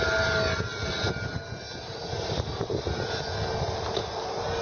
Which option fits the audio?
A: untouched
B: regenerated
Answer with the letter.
A